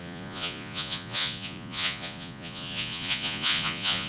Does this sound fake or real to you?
fake